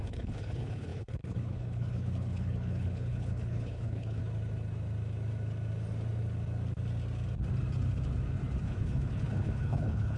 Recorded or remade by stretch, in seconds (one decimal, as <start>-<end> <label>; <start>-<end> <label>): 0.0-4.2 remade; 4.2-8.6 recorded; 8.6-10.2 remade